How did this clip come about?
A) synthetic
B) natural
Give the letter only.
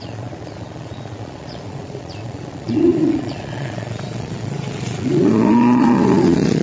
A